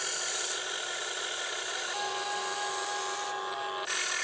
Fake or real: real